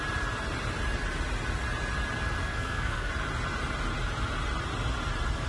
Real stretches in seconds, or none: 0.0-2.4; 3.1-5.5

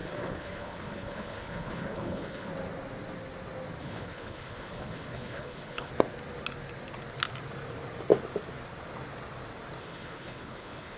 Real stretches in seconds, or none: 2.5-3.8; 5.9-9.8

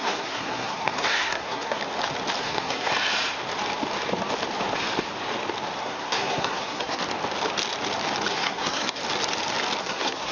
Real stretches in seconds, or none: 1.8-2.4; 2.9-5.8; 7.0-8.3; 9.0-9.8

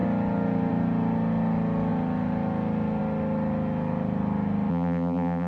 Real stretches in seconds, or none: 0.0-4.7

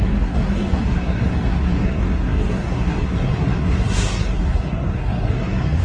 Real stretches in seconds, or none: none

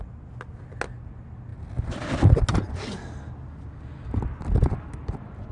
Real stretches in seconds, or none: 0.0-5.5